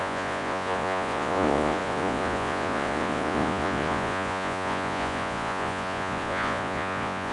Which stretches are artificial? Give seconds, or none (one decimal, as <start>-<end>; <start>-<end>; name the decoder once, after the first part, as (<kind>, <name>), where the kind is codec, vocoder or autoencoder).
0.0-7.3 (vocoder, Vocos)